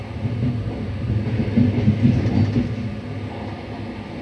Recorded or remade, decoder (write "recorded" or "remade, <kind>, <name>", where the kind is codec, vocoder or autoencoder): recorded